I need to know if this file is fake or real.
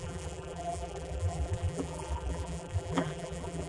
fake